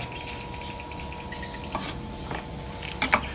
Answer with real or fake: real